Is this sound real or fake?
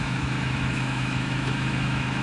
fake